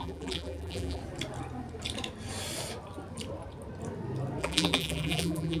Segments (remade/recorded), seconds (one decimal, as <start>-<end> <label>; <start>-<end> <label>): 0.0-1.0 remade; 1.0-4.4 recorded; 4.4-5.6 remade